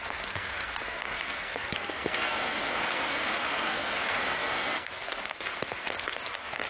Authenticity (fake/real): fake